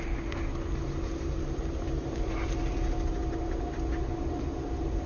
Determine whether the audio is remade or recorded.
recorded